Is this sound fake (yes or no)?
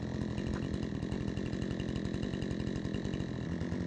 no